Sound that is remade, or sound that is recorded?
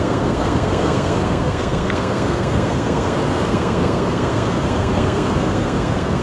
remade